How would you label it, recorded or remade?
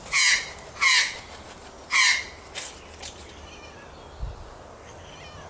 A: recorded